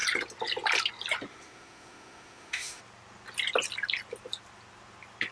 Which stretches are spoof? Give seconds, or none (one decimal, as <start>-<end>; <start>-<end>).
1.3-2.8